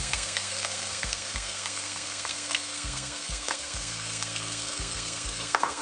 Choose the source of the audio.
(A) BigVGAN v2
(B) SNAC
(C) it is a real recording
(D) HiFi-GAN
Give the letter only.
B